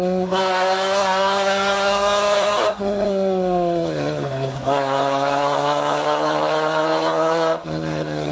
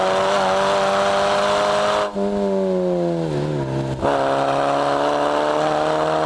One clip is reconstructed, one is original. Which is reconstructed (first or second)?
first